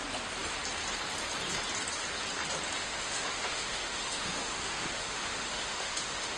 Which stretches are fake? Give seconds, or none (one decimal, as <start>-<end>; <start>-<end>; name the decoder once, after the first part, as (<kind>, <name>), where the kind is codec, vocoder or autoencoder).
2.8-6.4 (autoencoder, DAC-VAE)